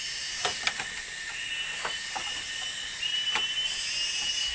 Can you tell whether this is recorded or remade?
recorded